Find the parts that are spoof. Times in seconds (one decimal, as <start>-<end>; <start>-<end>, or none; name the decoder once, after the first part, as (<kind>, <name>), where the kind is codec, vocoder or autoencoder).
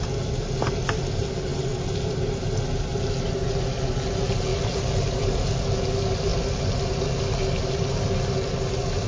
none